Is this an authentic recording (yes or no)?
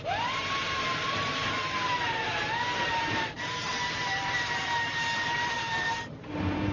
no